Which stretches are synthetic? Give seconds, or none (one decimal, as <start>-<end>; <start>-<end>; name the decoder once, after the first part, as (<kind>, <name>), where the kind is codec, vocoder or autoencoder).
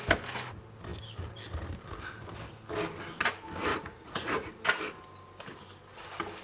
3.7-4.6 (vocoder, Vocos)